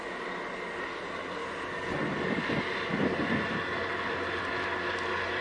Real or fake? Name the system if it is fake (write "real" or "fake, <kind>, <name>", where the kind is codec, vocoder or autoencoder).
real